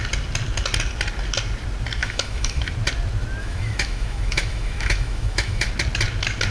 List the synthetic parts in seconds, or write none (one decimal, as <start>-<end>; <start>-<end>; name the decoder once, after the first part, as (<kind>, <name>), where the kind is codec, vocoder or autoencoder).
2.0-2.7 (autoencoder, DAC-VAE); 3.4-5.7